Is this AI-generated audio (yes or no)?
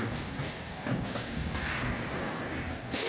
yes